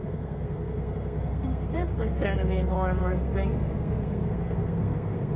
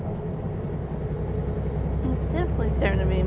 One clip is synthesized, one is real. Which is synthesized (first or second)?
first